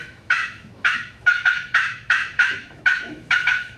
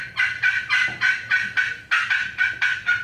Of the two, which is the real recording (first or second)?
second